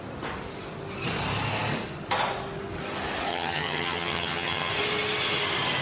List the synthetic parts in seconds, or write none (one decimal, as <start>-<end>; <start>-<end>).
3.3-4.7